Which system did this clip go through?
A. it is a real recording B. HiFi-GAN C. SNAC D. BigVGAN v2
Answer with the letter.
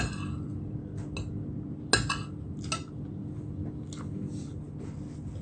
A